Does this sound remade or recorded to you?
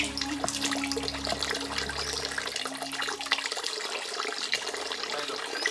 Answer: recorded